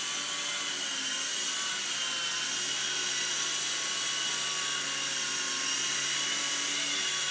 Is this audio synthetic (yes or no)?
no